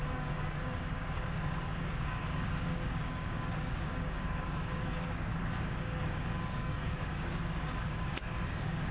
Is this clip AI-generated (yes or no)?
yes